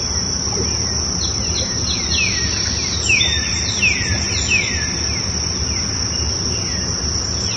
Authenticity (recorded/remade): recorded